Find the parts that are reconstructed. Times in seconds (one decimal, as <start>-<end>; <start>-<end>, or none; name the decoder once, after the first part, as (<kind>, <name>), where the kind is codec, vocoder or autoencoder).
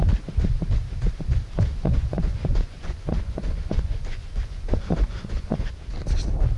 1.7-5.7 (vocoder, Vocos)